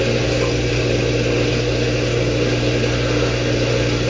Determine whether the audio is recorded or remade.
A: recorded